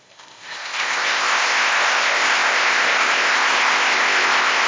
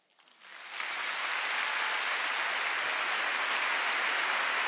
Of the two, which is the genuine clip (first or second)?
second